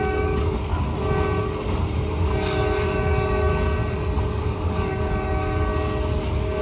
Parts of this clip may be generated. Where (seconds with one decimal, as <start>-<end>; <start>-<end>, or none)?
0.0-0.7; 1.4-3.5; 4.2-5.7